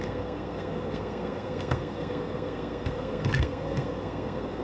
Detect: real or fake fake